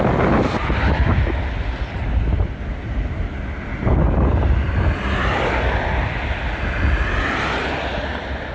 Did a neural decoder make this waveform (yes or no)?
no